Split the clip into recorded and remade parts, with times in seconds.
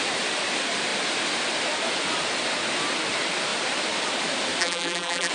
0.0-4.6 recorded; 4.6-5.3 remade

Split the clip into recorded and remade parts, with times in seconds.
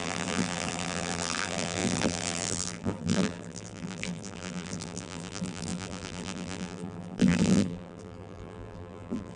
0.0-9.4 remade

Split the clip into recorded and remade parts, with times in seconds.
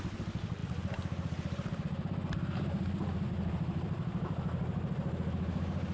0.0-5.9 recorded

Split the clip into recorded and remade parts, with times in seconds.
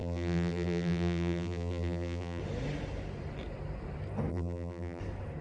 0.0-2.4 remade; 2.4-4.3 recorded; 4.3-5.0 remade; 5.0-5.4 recorded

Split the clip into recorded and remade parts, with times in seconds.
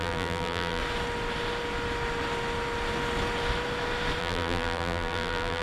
0.0-0.8 remade; 0.8-4.2 recorded; 4.2-5.6 remade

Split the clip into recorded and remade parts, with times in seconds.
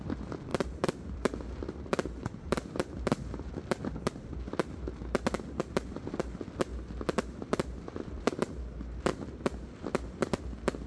0.0-0.5 recorded; 0.5-3.5 remade; 3.5-6.7 recorded; 6.7-8.2 remade; 8.2-10.9 recorded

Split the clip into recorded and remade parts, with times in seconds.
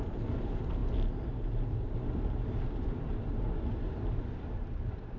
0.0-0.8 remade; 0.8-3.9 recorded; 3.9-5.2 remade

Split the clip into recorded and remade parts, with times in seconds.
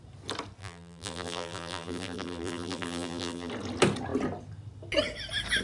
0.0-0.6 recorded; 0.6-3.5 remade; 3.5-5.6 recorded